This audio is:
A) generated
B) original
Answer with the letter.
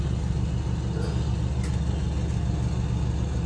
B